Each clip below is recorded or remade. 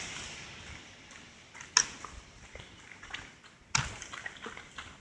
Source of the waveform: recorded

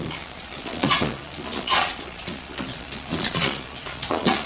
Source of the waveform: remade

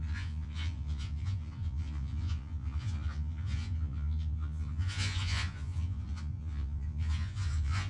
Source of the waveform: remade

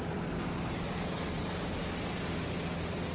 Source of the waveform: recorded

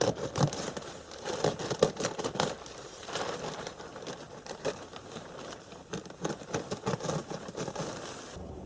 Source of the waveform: recorded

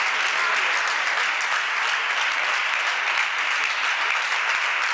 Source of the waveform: recorded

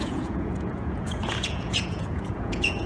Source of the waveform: remade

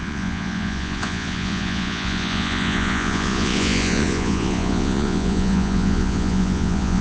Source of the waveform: remade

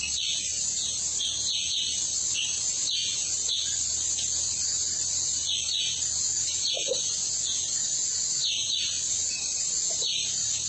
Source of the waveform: recorded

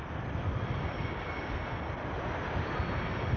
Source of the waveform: recorded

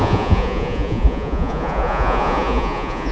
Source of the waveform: remade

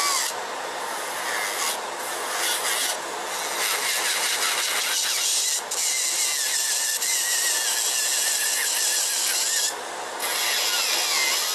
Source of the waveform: recorded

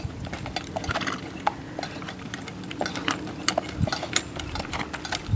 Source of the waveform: recorded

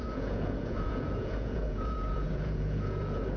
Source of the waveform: remade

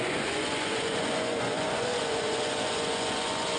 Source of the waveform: remade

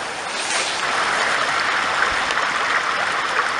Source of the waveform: recorded